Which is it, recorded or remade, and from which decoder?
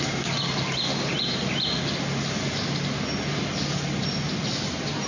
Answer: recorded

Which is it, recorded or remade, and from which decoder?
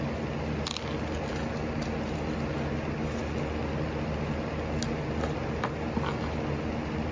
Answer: recorded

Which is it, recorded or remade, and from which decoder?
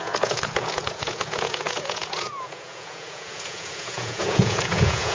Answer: remade, vocoder, Vocos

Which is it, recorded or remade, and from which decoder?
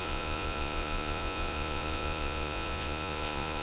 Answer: remade, vocoder, Vocos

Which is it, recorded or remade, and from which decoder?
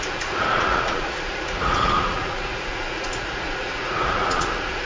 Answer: remade, vocoder, Vocos